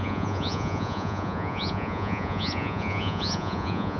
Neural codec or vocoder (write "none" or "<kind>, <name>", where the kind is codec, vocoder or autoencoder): vocoder, Vocos